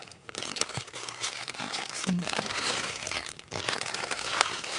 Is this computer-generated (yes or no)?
yes